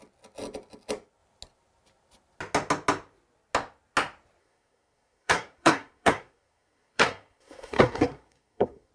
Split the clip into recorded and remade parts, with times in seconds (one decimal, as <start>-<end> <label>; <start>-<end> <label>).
0.0-4.4 recorded; 4.4-8.9 remade